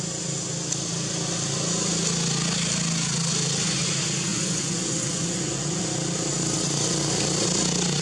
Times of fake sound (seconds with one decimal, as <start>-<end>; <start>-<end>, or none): 4.3-5.8